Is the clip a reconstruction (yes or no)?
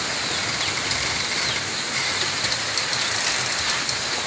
no